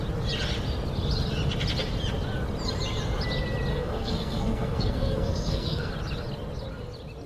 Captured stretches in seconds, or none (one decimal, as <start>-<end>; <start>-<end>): 0.0-3.7; 5.9-7.3